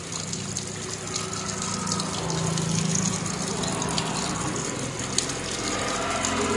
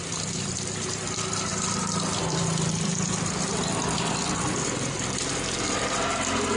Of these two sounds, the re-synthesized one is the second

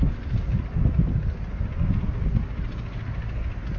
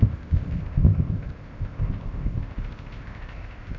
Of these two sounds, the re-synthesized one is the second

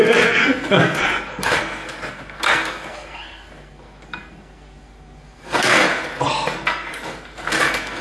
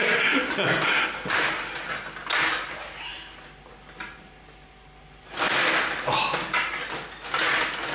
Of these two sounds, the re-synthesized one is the first